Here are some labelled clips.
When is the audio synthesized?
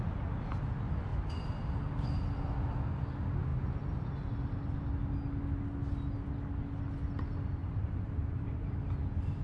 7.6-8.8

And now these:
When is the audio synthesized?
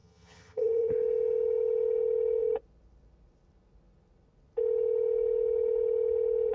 0.0-0.9